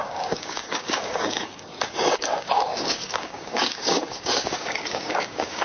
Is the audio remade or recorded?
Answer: remade